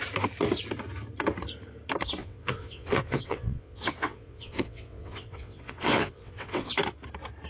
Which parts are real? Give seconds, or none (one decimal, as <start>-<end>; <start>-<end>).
0.0-2.2; 6.7-7.5